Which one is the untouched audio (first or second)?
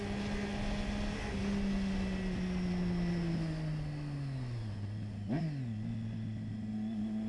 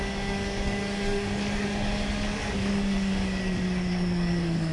first